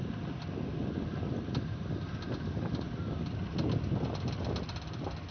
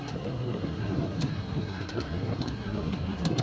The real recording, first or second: first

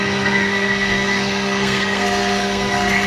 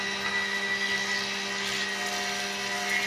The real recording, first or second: second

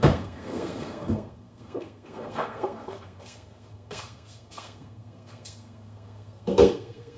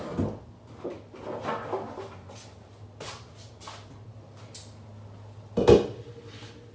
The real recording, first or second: second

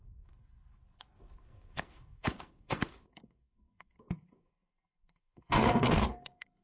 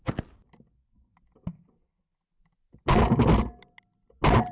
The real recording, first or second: second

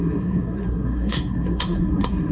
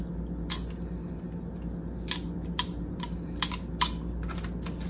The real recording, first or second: second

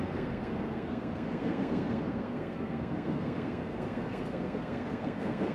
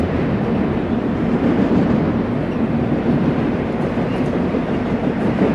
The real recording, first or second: second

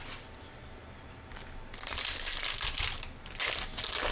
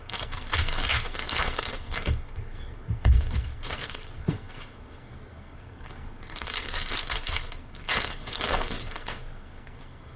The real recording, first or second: first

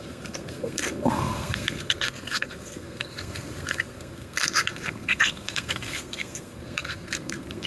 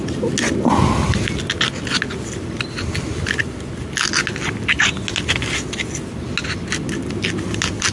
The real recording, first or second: second